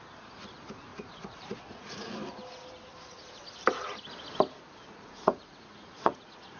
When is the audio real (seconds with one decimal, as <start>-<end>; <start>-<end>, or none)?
0.0-0.9; 2.1-4.8

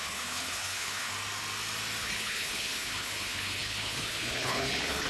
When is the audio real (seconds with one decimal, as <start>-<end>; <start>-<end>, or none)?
1.1-2.0

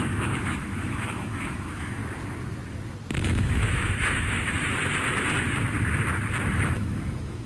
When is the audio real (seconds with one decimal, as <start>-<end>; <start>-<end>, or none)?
2.0-3.2; 4.7-6.5

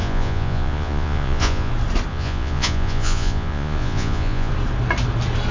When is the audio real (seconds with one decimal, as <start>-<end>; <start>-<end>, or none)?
1.7-2.1; 4.5-5.5

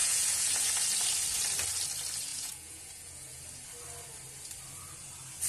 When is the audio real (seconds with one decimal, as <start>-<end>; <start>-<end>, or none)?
0.7-2.3; 3.4-5.5